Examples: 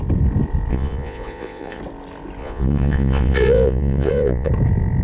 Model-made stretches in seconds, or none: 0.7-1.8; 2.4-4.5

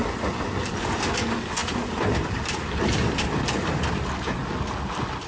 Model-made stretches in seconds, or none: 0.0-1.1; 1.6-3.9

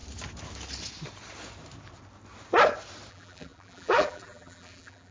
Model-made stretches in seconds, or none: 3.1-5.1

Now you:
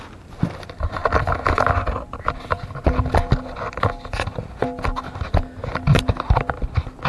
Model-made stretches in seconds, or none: none